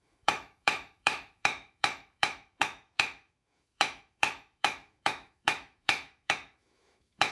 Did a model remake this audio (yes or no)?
yes